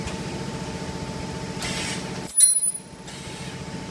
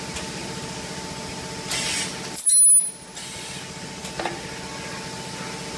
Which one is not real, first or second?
first